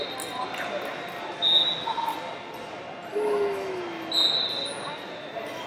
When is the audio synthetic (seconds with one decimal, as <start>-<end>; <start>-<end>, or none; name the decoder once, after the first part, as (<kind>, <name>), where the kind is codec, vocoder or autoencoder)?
3.1-3.8 (autoencoder, DAC-VAE)